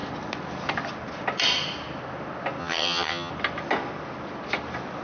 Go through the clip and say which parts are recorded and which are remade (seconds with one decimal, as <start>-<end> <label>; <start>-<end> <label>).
0.0-2.6 recorded; 2.6-3.3 remade; 3.3-5.0 recorded